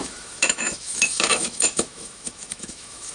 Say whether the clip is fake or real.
fake